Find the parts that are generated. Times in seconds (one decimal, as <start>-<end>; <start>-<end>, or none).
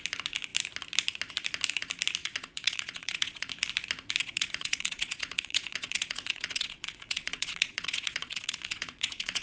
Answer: 2.2-3.5; 4.2-9.4